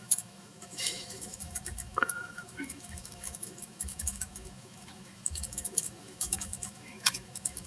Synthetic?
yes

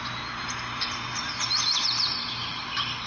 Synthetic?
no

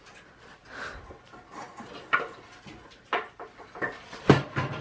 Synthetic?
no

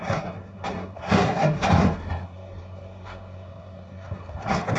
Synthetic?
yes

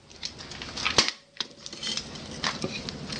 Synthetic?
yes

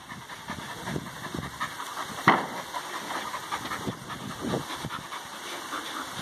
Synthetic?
no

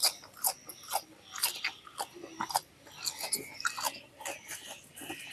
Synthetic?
no